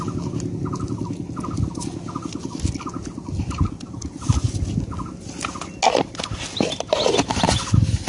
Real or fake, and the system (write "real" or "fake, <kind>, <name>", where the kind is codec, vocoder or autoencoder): real